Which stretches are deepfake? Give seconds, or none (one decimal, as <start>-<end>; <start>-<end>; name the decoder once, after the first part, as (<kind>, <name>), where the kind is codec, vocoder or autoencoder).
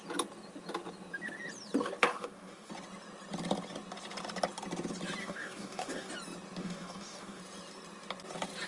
2.1-2.7 (codec, DAC); 5.2-6.1; 6.6-7.4